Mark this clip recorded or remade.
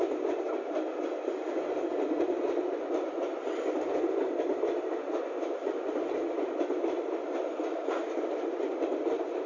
recorded